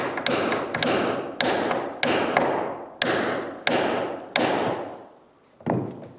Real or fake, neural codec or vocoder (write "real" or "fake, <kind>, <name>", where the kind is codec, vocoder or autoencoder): real